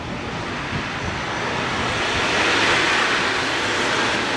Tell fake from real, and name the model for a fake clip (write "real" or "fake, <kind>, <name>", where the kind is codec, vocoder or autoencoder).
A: real